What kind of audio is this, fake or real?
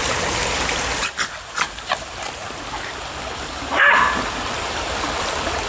real